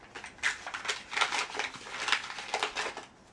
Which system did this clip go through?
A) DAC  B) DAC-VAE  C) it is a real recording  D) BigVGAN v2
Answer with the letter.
C